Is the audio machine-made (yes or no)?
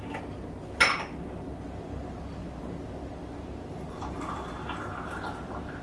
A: no